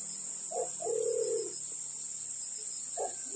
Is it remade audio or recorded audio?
recorded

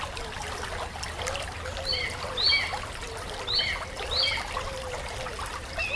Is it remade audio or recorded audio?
recorded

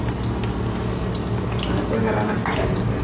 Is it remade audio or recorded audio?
recorded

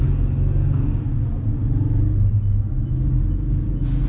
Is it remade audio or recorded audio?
recorded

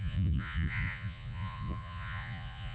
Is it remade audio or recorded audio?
remade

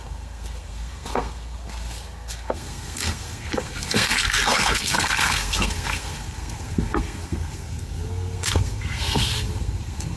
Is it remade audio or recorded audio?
remade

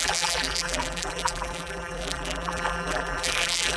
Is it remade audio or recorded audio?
remade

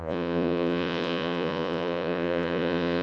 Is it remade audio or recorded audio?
remade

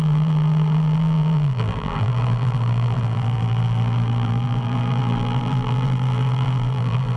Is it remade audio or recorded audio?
remade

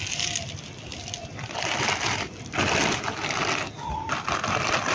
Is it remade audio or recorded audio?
recorded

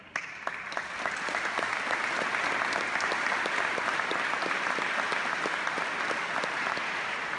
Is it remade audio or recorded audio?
recorded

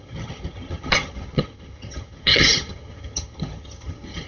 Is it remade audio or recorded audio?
remade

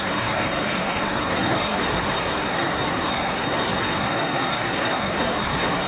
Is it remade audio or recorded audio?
remade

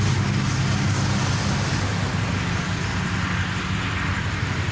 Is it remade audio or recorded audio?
recorded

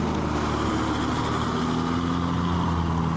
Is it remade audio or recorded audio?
recorded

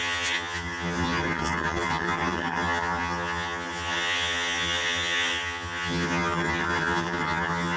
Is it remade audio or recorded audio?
remade